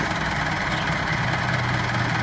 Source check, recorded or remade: recorded